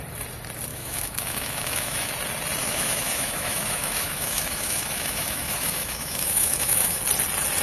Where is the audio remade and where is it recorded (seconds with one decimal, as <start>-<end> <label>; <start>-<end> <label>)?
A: 0.0-0.7 recorded; 0.7-2.1 remade; 2.1-2.6 recorded; 2.6-7.0 remade; 7.0-7.6 recorded